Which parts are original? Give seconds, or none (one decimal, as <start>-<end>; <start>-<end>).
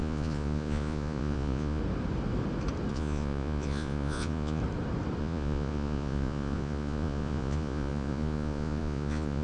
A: 1.8-2.9; 4.6-5.2